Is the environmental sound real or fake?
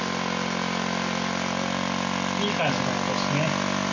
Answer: real